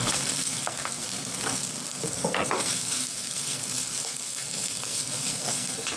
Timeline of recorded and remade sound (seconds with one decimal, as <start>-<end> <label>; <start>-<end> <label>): 0.0-6.0 remade